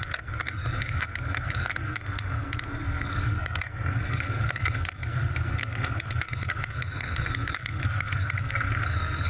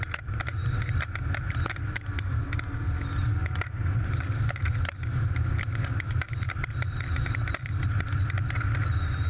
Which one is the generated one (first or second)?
first